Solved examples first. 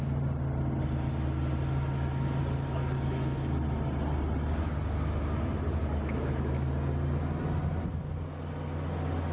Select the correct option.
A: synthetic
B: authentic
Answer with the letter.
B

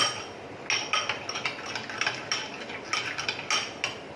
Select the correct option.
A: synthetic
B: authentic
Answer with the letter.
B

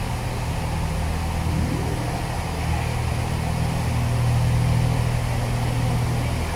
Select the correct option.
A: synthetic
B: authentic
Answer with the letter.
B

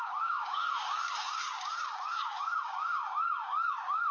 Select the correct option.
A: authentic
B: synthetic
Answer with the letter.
B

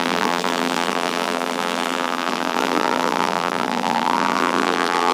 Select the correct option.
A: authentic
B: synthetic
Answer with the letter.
B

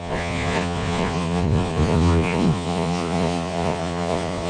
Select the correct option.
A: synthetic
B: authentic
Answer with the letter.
A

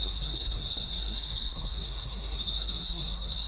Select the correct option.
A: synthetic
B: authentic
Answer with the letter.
A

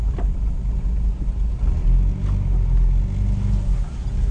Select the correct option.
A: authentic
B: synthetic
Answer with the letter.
A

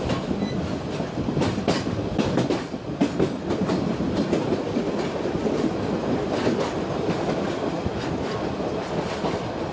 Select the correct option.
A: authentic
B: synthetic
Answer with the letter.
A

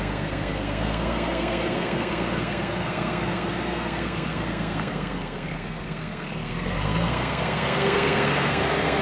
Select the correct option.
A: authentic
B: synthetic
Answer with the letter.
B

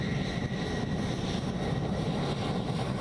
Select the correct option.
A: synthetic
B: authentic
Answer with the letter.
B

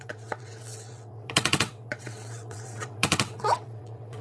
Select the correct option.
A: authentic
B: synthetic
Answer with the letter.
B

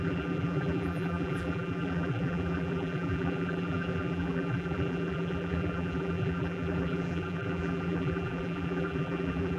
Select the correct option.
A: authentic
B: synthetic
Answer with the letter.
B